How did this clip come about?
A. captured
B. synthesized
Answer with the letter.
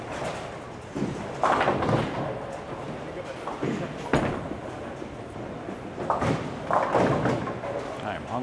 A